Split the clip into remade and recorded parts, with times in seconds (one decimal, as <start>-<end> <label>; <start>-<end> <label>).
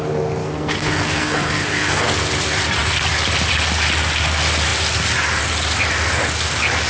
0.0-0.4 recorded; 0.4-2.1 remade; 2.1-6.9 recorded